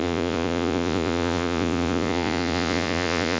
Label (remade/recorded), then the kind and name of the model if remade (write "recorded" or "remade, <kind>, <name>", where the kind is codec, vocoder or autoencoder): remade, vocoder, Vocos